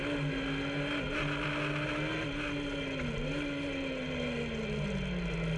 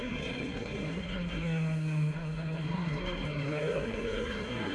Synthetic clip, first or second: second